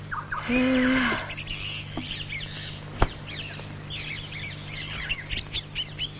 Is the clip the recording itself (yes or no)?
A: yes